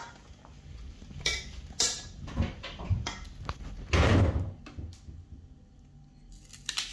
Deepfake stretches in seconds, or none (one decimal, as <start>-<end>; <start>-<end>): none